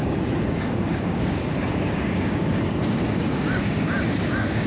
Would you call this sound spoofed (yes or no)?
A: yes